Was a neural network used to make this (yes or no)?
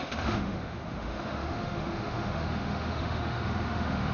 yes